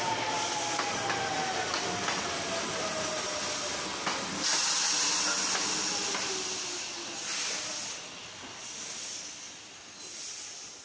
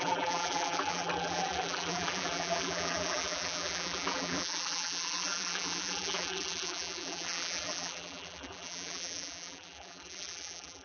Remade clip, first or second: second